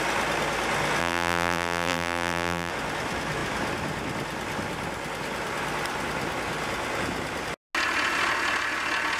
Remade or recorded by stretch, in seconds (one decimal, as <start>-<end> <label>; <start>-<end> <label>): 0.0-1.0 recorded; 1.0-2.7 remade; 2.7-9.2 recorded